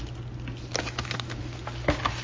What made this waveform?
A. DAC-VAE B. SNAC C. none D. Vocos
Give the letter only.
C